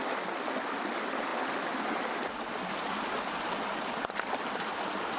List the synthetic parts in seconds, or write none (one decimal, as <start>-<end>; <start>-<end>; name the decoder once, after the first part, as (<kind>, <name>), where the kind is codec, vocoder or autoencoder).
none